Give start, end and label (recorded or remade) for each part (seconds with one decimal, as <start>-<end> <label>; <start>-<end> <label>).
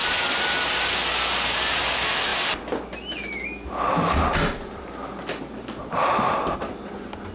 0.0-7.3 recorded